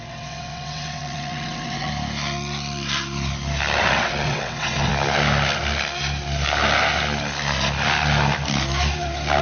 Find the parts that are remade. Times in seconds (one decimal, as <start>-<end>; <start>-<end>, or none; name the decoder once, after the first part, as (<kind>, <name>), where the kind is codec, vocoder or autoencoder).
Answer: 0.0-1.9 (vocoder, WaveNeXt); 3.8-4.9